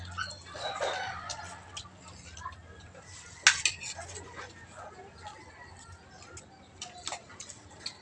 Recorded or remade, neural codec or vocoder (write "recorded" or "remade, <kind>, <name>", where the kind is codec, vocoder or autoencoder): recorded